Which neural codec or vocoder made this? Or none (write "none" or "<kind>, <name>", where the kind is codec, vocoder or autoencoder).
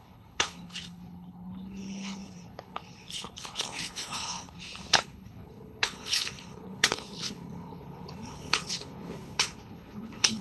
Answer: codec, HILCodec